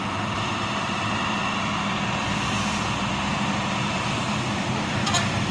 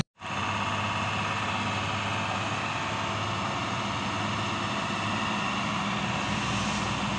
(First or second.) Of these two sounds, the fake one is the first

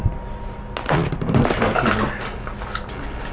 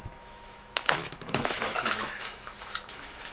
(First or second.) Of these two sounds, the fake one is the second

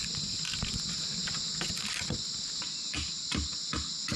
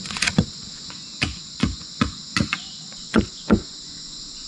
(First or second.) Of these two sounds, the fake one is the second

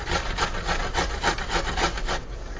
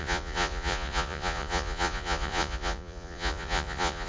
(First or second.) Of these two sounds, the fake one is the second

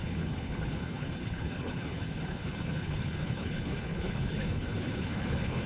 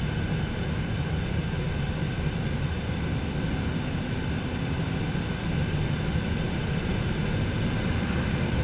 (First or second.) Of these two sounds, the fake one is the first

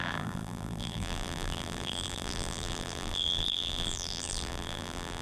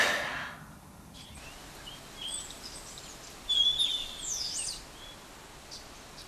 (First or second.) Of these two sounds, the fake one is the first